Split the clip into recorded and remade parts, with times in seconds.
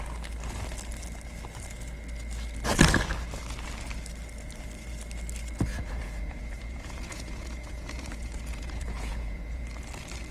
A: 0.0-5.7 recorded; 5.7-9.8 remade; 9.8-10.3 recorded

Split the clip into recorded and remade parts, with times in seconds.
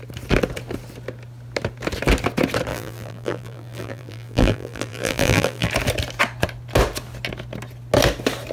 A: 0.0-2.7 recorded; 2.7-5.7 remade; 5.7-8.5 recorded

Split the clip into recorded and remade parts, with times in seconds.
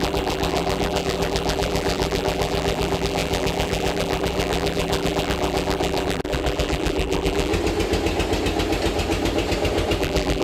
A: 0.0-7.5 remade; 7.5-10.0 recorded; 10.0-10.4 remade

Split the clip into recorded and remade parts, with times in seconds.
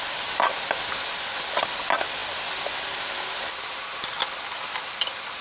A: 0.0-5.4 recorded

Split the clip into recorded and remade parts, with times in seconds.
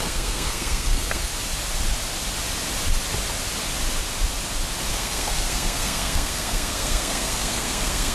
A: 0.0-1.3 remade; 1.3-4.9 recorded; 4.9-8.1 remade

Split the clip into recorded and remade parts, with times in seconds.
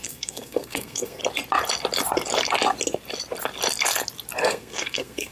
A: 0.0-1.2 remade; 1.2-4.4 recorded; 4.4-5.3 remade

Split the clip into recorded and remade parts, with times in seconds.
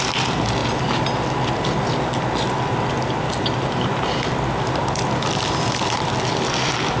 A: 0.0-7.0 recorded